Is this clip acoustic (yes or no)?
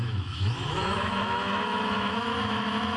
no